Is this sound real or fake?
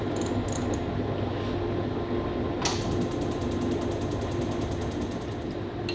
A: real